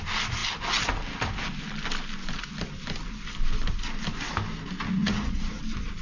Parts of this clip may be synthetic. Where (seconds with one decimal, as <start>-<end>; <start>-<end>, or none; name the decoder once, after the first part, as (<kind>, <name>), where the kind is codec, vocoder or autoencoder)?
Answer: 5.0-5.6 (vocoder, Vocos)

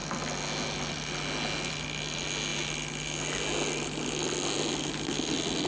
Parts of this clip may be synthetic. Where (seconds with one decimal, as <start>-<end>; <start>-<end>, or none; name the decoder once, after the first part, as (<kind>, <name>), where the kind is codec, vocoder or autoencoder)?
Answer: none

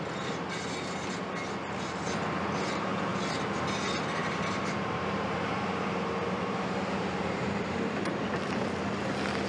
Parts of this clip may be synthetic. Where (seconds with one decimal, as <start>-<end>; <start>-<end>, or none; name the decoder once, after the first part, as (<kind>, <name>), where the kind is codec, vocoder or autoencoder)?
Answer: 4.2-8.4 (vocoder, BigVGAN v2)

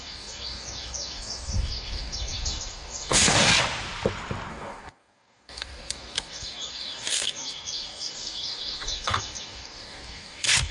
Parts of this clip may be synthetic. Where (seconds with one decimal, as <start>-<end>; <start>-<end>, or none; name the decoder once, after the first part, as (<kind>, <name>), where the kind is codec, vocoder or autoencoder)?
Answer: 0.0-3.5 (codec, DAC); 4.5-10.7